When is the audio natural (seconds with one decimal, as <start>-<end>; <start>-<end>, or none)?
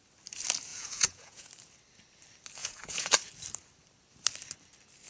0.0-0.7; 1.5-2.6; 3.1-5.1